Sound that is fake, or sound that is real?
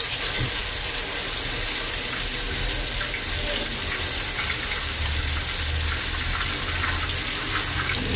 real